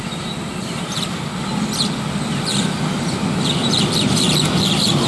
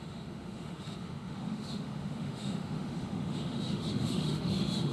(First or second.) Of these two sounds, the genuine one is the first